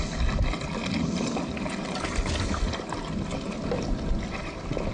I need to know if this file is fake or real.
real